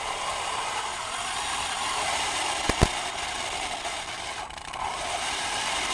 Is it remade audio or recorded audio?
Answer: recorded